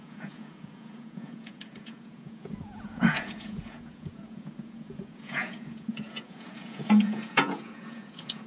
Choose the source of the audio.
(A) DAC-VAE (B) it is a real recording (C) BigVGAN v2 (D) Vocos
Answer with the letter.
D